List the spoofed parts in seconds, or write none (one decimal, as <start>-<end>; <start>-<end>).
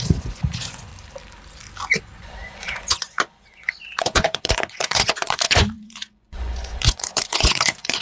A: 0.0-0.9; 2.0-8.0